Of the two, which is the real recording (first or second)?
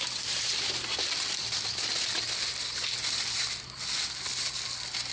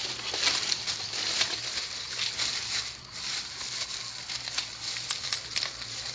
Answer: first